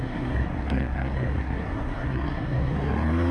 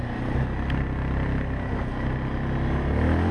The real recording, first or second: second